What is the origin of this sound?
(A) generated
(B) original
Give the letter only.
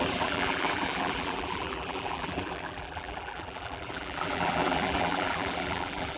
A